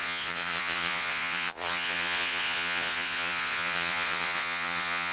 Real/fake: fake